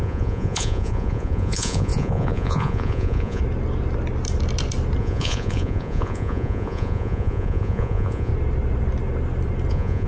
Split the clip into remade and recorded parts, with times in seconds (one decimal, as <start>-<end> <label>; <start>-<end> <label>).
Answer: 0.0-3.4 remade; 3.4-5.0 recorded; 5.0-8.3 remade; 8.3-9.7 recorded; 9.7-10.1 remade